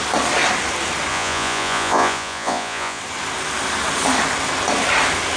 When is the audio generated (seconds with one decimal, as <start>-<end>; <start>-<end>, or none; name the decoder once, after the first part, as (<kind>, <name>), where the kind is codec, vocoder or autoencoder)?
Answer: 1.1-3.0 (vocoder, Vocos)